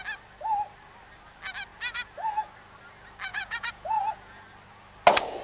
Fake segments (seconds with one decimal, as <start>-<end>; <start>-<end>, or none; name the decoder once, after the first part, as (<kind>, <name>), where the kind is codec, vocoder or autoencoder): 3.3-4.4 (vocoder, Vocos)